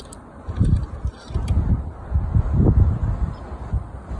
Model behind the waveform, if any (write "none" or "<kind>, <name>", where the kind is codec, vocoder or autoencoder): none